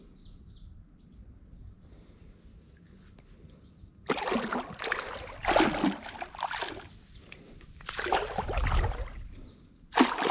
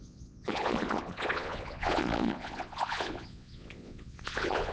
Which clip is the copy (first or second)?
second